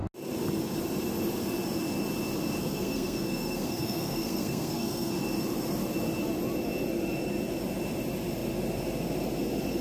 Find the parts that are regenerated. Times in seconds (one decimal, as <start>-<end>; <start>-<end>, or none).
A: 2.6-5.1